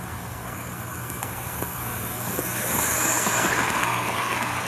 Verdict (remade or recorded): remade